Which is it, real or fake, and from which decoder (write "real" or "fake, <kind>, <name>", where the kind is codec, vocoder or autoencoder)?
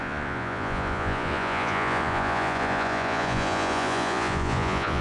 fake, vocoder, Vocos